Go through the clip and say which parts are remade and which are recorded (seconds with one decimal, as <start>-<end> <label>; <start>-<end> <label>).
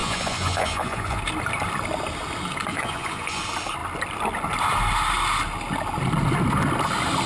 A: 0.0-1.2 remade; 1.2-2.7 recorded; 2.7-3.4 remade; 3.4-7.3 recorded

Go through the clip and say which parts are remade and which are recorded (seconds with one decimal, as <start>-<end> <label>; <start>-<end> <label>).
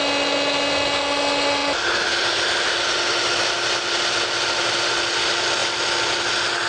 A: 0.0-6.7 recorded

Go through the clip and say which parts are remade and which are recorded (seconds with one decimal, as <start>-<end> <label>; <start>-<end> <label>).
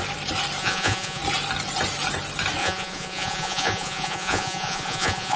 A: 0.0-0.6 recorded; 0.6-1.2 remade; 1.2-2.6 recorded; 2.6-5.4 remade